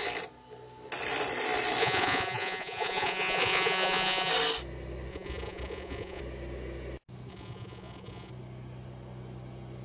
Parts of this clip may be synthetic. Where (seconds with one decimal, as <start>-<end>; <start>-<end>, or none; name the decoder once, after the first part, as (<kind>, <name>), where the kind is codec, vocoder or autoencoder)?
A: 1.8-4.3 (vocoder, Vocos); 5.1-6.2; 7.3-8.3